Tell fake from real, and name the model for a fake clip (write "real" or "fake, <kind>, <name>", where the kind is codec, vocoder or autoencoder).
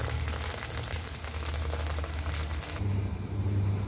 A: real